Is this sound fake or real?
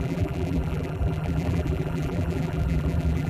fake